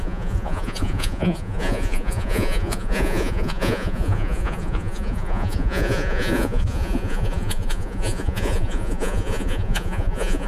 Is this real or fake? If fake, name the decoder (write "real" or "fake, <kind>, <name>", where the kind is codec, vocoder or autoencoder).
fake, vocoder, Vocos